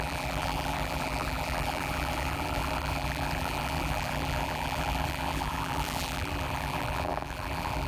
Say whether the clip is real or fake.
fake